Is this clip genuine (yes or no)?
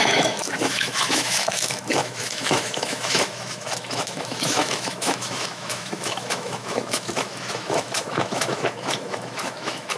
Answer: no